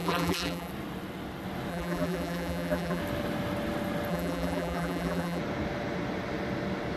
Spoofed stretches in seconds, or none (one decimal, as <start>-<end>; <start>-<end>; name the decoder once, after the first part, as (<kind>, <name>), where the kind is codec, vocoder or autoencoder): 0.0-0.7 (vocoder, BigVGAN v2); 1.7-3.0; 4.1-5.4